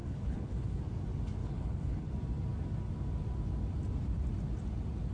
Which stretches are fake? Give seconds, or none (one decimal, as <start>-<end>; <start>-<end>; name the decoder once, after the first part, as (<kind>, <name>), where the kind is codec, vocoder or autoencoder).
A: 0.0-0.8 (codec, HILCodec); 1.4-2.1